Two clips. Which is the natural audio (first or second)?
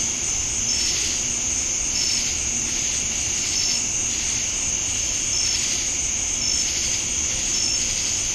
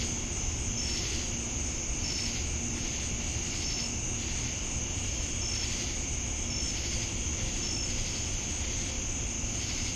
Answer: second